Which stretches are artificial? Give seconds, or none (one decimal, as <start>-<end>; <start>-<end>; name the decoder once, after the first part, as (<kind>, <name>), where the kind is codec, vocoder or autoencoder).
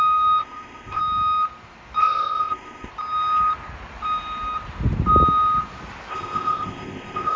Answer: 0.4-1.0 (codec, ZipCodec); 2.0-2.9; 6.1-7.4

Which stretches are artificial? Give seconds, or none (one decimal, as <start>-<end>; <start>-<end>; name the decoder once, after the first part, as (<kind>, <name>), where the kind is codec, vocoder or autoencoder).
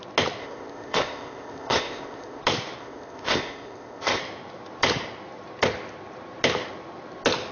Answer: 0.4-2.4 (codec, ZipCodec); 2.8-4.2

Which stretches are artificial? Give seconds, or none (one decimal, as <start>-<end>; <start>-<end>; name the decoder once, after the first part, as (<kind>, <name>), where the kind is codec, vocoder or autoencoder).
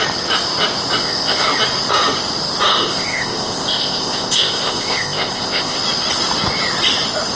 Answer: 1.0-1.5 (codec, ZipCodec); 2.7-5.8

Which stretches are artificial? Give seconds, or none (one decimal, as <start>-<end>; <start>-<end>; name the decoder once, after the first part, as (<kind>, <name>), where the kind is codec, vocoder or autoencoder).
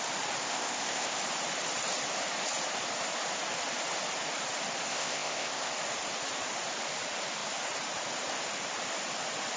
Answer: 0.4-1.2 (codec, ZipCodec); 4.9-5.7